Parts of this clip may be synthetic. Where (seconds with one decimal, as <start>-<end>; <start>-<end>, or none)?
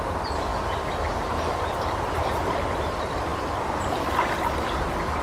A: none